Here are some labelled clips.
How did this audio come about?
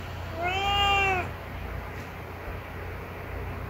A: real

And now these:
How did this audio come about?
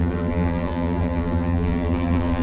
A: fake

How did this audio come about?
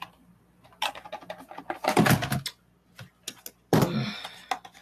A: real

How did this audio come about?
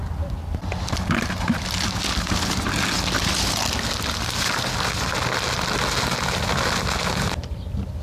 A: real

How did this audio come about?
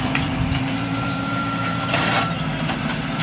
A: fake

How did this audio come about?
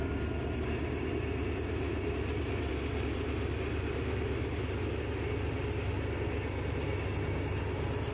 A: real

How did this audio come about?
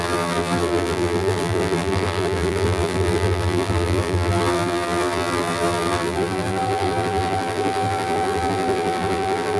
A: fake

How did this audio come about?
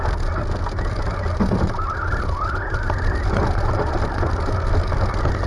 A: real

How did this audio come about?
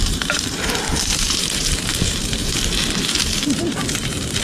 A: fake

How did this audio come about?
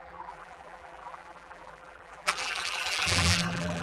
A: fake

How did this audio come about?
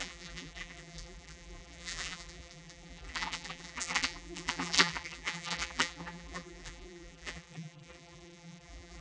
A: fake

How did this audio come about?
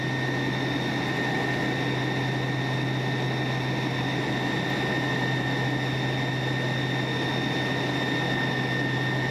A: real